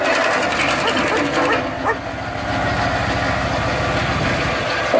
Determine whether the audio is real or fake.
real